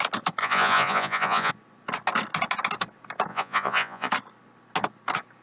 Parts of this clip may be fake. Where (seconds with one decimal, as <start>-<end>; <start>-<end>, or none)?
0.4-1.5; 3.3-4.1